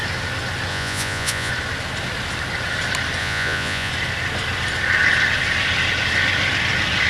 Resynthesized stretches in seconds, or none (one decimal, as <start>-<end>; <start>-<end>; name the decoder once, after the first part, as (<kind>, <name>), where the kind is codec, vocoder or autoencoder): 0.7-1.5 (vocoder, Vocos); 3.2-3.9